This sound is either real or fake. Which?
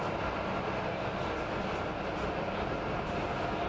real